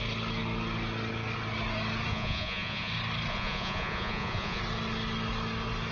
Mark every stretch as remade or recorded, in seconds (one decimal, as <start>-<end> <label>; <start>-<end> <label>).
0.0-2.1 recorded; 2.1-2.9 remade; 2.9-3.3 recorded; 3.3-4.6 remade; 4.6-5.9 recorded

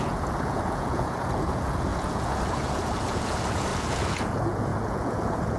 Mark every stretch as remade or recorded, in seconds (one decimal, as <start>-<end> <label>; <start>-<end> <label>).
0.0-5.6 remade